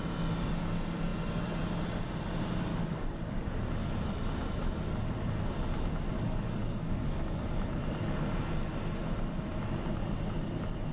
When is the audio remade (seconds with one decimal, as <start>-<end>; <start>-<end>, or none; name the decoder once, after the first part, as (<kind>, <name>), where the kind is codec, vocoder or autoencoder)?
2.7-3.3 (codec, DAC); 6.1-7.2